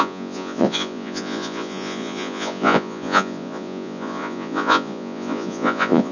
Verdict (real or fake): fake